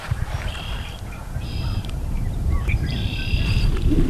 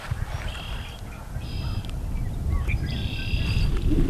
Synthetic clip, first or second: first